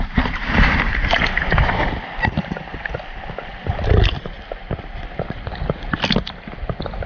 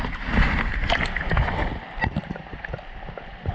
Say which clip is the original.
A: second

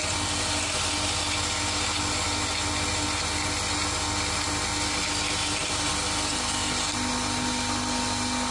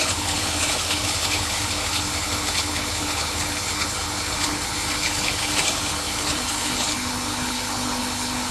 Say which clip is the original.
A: first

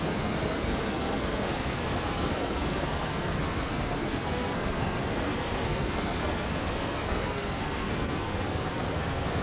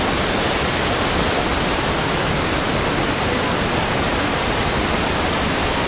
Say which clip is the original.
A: second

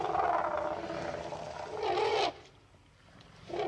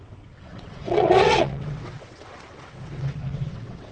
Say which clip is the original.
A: first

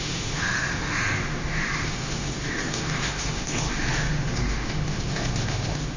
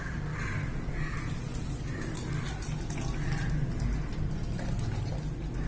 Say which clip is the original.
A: second